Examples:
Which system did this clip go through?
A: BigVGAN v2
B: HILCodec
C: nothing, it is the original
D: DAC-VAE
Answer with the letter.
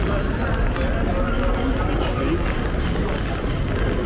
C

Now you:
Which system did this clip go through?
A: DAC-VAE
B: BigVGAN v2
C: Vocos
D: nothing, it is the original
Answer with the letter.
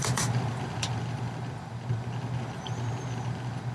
B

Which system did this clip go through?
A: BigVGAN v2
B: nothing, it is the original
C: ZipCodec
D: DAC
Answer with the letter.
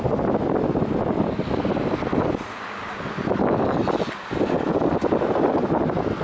B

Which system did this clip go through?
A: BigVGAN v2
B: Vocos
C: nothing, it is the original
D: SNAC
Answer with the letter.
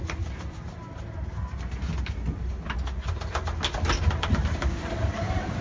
C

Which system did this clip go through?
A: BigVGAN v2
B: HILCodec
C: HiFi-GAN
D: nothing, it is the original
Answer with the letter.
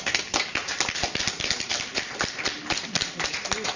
D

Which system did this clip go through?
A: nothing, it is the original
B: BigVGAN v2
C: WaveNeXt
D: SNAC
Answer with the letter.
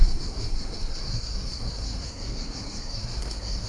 D